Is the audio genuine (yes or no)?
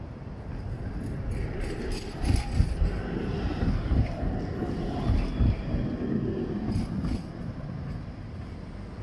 yes